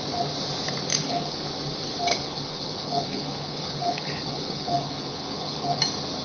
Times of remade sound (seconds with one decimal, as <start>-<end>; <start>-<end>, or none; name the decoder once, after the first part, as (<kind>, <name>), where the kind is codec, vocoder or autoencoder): 0.9-1.4 (codec, HILCodec); 2.1-5.8